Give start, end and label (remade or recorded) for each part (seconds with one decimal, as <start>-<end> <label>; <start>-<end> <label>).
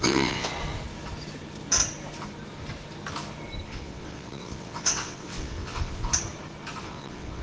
0.0-0.5 remade; 0.5-3.6 recorded; 3.6-6.1 remade; 6.1-6.8 recorded; 6.8-7.4 remade